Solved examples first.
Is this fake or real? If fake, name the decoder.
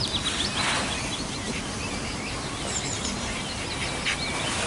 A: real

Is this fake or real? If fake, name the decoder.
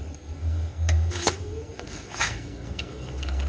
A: fake, codec, SNAC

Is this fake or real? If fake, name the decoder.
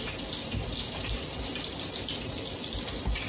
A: real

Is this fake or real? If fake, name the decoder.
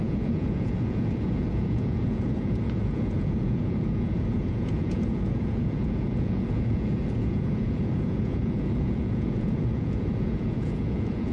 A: fake, vocoder, Vocos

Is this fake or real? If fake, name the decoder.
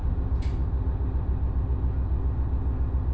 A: real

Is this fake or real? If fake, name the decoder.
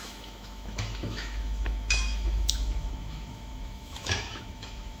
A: fake, autoencoder, DAC-VAE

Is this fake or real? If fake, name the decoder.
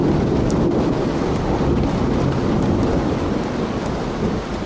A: real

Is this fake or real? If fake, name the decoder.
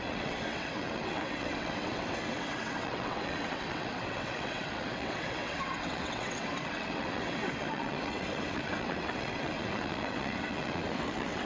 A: fake, vocoder, WaveNeXt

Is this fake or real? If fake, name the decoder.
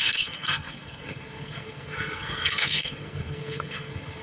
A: fake, codec, SNAC